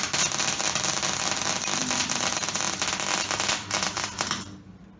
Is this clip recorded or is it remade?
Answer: remade